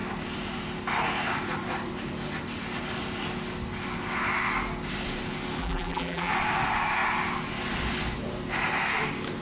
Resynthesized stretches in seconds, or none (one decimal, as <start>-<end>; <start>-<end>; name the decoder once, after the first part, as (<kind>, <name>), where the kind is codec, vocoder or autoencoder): 5.6-6.3 (vocoder, BigVGAN v2)